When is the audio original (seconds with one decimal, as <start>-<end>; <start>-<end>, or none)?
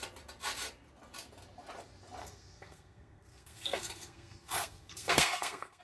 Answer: 0.0-2.2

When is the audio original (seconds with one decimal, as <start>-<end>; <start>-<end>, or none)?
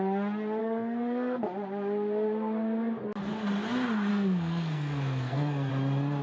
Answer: 0.0-0.6; 1.4-4.1; 5.7-6.2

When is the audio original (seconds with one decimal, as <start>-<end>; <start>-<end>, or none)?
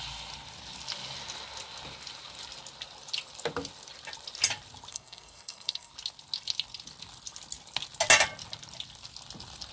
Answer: 0.0-4.9; 5.9-9.7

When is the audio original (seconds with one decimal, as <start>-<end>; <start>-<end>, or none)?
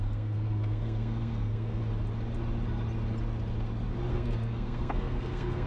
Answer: 1.8-4.1